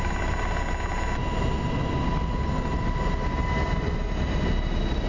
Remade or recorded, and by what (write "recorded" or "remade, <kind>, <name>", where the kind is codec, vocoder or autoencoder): recorded